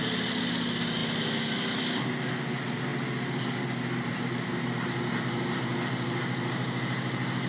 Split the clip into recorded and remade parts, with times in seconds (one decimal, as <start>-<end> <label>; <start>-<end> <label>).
0.0-7.5 recorded